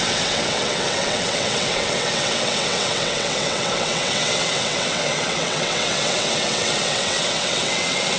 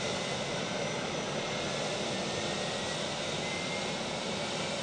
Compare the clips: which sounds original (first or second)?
second